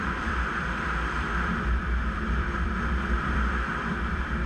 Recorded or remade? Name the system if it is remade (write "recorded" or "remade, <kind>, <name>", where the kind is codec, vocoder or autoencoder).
remade, vocoder, BigVGAN v2